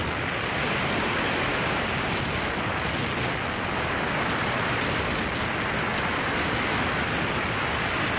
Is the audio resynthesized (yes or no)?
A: no